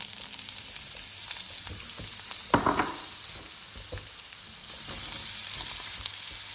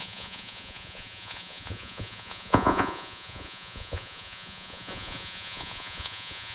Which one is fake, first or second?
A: second